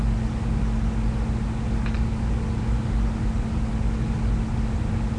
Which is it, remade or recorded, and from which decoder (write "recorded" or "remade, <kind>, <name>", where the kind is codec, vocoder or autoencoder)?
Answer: recorded